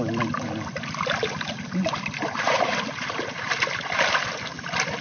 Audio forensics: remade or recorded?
remade